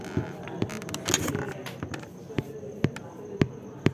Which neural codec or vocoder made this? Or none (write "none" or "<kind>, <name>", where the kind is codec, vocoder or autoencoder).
none